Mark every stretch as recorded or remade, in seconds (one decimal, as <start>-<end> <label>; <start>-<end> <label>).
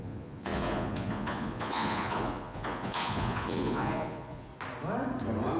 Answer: 0.0-4.5 remade; 4.5-5.6 recorded